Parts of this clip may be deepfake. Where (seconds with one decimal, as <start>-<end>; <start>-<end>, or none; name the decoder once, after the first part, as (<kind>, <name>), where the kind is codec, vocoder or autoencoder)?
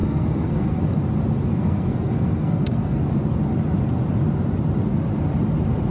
0.0-0.8 (codec, SNAC); 1.5-3.0